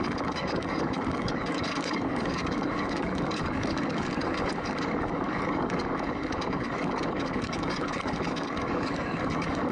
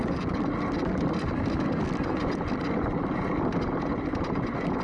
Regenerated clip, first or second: first